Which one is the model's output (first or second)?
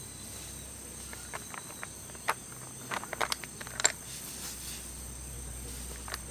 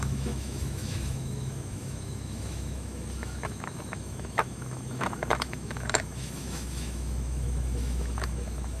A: second